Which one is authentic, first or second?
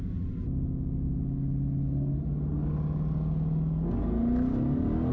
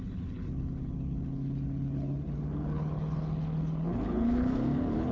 first